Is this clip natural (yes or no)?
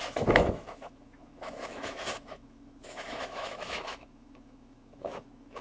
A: no